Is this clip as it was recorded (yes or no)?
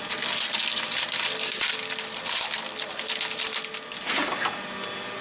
yes